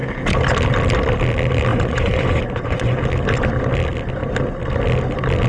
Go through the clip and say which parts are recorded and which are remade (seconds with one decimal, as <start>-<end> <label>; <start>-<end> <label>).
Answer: 0.0-1.7 recorded; 1.7-3.0 remade; 3.0-5.5 recorded